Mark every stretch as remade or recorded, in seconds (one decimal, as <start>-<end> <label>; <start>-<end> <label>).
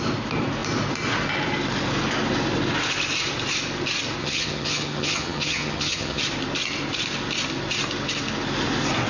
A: 0.0-4.2 recorded; 4.2-6.2 remade; 6.2-9.1 recorded